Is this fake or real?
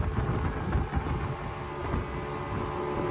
real